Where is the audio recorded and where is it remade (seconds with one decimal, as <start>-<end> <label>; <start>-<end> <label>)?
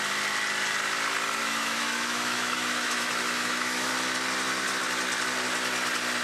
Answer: 0.0-1.4 recorded; 1.4-3.9 remade; 3.9-6.2 recorded